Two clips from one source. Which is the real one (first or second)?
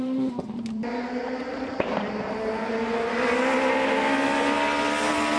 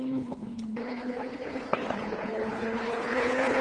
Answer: first